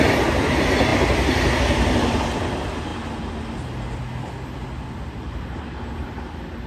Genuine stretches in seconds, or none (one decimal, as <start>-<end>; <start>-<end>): 0.0-6.7